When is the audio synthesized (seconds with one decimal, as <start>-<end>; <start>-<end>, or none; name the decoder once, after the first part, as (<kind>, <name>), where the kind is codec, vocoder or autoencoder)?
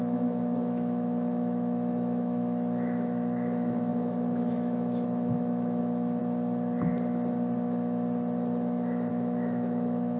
0.0-6.2 (autoencoder, DAC-VAE); 9.1-10.2